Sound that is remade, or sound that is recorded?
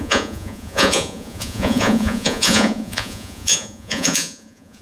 remade